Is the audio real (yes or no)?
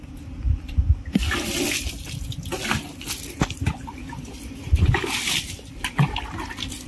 yes